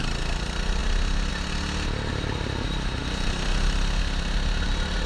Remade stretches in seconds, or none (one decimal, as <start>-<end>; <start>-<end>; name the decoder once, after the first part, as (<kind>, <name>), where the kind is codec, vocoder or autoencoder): none

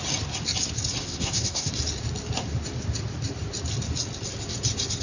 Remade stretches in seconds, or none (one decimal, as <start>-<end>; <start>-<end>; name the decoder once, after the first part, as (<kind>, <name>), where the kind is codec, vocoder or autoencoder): 1.0-1.7 (codec, SNAC)

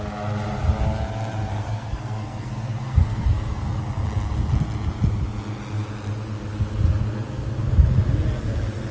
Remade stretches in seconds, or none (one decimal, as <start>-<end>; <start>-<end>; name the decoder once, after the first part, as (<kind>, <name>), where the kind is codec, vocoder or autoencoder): 1.5-3.8 (codec, SNAC)

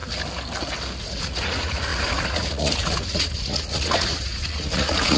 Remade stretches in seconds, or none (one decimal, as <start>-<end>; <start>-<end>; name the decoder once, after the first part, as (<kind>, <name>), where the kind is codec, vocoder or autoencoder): 1.0-5.2 (vocoder, Vocos)

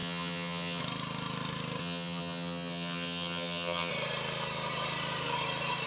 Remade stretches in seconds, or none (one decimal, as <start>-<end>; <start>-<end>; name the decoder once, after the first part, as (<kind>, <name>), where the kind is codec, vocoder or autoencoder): 0.0-0.8 (vocoder, HiFi-GAN); 1.8-3.9

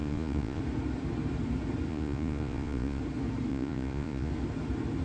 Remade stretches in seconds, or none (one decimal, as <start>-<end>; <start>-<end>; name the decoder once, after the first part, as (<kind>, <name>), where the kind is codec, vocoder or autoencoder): 0.0-0.6 (vocoder, Vocos); 1.9-3.0; 3.5-4.3

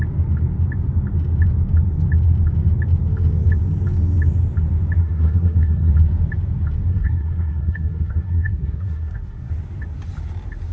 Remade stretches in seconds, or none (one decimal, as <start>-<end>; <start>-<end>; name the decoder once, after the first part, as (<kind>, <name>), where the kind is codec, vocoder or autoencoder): 5.0-5.9 (codec, SNAC); 6.9-9.5